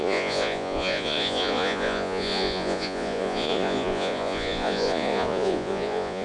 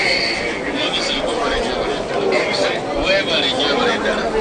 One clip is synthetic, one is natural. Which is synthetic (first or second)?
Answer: first